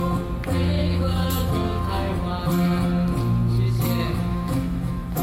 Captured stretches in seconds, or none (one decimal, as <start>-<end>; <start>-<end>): 0.0-0.8; 2.1-4.3